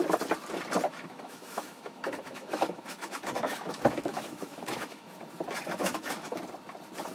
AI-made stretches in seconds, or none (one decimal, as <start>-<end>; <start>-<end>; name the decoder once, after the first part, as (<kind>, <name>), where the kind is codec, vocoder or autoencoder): 0.9-5.2 (autoencoder, DAC-VAE); 5.8-6.4